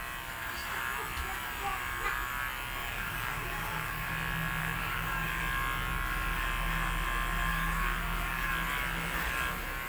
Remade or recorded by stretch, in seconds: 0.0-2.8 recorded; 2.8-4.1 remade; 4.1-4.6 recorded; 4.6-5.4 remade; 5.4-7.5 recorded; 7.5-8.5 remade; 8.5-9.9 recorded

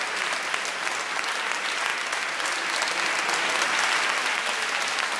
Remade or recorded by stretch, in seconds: 0.0-5.2 recorded

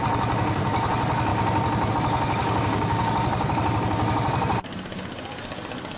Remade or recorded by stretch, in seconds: 0.0-2.4 recorded; 2.4-3.1 remade; 3.1-6.0 recorded

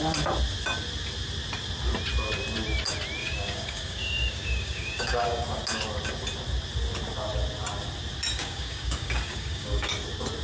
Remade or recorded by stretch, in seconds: 0.0-3.2 recorded; 3.2-5.6 remade; 5.6-8.3 recorded; 8.3-9.9 remade; 9.9-10.4 recorded

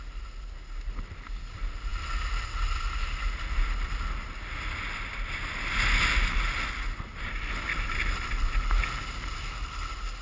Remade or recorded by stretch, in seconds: 0.0-10.2 recorded

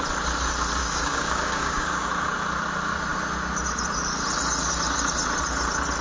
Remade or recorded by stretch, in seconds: 0.0-0.8 recorded; 0.8-2.1 remade; 2.1-6.0 recorded

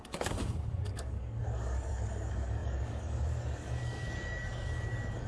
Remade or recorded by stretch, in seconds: 0.0-5.3 remade

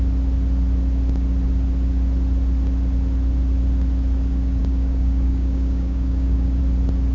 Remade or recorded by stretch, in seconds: 0.0-4.6 recorded; 4.6-6.6 remade; 6.6-7.1 recorded